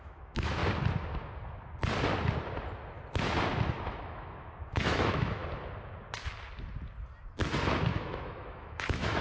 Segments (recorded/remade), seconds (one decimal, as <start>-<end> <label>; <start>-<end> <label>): 0.0-0.6 remade; 0.6-3.8 recorded; 3.8-5.4 remade; 5.4-7.9 recorded; 7.9-9.2 remade